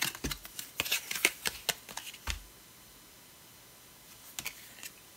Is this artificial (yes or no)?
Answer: no